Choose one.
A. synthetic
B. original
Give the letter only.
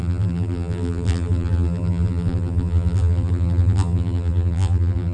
A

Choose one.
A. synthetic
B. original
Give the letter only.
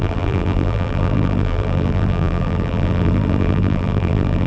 A